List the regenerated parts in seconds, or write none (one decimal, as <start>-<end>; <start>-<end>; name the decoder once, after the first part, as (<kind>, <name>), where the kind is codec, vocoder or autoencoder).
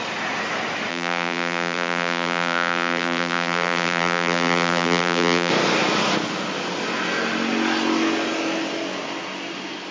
0.9-5.5 (vocoder, BigVGAN v2)